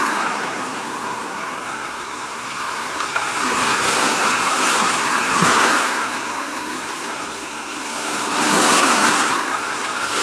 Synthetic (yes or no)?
yes